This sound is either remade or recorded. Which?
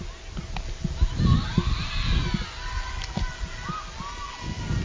recorded